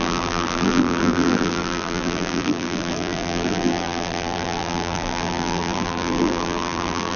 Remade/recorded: remade